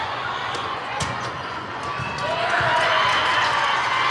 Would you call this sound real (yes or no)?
no